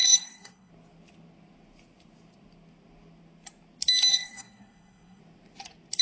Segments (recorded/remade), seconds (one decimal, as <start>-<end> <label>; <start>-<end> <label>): 0.0-0.7 remade; 0.7-4.1 recorded; 4.1-5.2 remade; 5.2-6.0 recorded